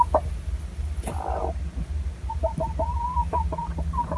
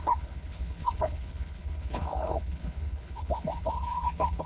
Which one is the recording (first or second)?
first